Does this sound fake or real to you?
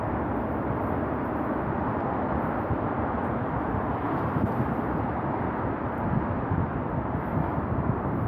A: real